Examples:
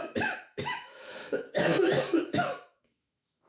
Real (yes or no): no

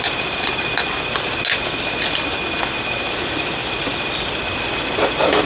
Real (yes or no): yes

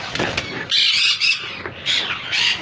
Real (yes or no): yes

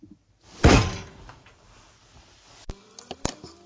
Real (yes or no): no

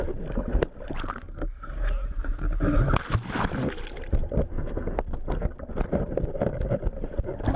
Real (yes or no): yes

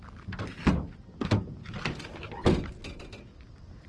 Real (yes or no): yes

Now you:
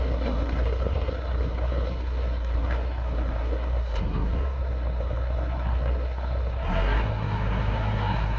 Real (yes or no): no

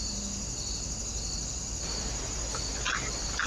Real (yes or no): yes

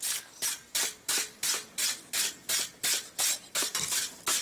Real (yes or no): yes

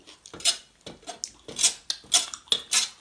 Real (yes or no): yes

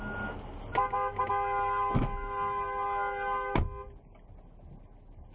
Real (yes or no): yes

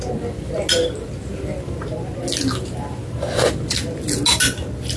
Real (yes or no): yes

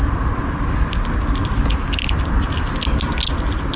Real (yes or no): yes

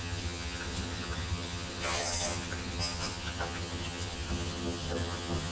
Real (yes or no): no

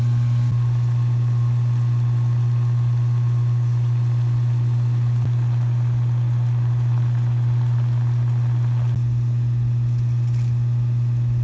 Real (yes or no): yes